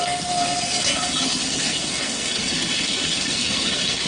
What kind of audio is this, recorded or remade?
remade